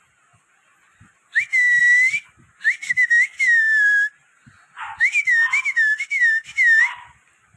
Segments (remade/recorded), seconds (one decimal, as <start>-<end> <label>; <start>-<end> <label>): 0.0-7.6 recorded